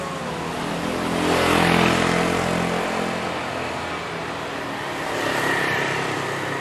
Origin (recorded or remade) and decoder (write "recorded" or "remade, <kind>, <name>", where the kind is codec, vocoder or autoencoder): recorded